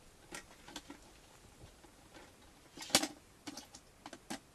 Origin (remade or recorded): recorded